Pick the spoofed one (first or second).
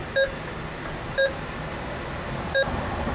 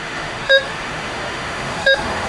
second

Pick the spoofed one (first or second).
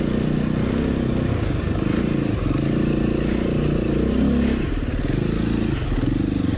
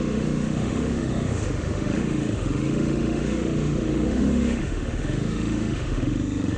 second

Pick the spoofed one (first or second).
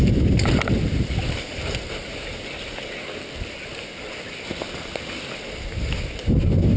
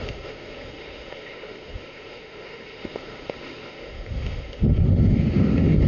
second